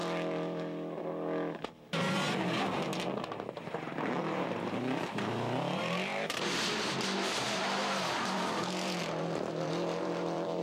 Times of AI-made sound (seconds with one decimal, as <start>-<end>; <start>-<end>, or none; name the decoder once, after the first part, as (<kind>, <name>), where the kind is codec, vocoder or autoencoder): 3.5-10.6 (vocoder, BigVGAN v2)

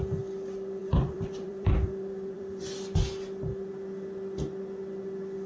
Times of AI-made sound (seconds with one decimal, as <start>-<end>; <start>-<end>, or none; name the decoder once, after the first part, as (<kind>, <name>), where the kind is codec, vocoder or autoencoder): 0.8-2.6 (vocoder, BigVGAN v2)

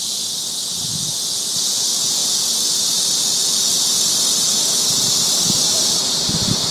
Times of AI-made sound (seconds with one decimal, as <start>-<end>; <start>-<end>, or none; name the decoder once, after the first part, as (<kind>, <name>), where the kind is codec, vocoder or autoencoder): none